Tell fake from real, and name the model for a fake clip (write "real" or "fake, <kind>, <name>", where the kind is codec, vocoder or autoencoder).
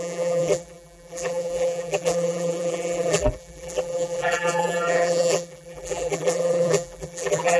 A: fake, vocoder, BigVGAN v2